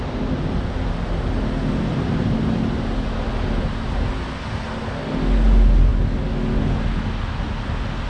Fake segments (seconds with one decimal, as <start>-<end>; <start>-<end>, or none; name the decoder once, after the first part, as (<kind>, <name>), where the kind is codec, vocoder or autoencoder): none